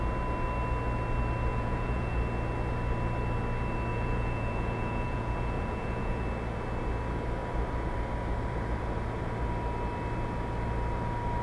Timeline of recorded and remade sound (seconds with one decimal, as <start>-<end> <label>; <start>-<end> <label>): 0.0-1.5 recorded; 1.5-2.2 remade; 2.2-3.9 recorded; 3.9-6.2 remade; 6.2-11.4 recorded